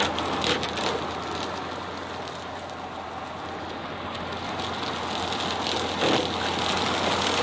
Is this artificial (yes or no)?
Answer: no